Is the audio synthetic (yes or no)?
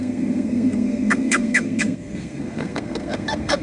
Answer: yes